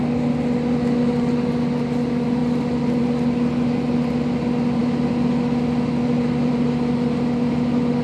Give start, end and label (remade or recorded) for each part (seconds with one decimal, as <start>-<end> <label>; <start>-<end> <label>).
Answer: 0.0-8.0 recorded